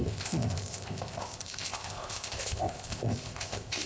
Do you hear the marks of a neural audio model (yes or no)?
yes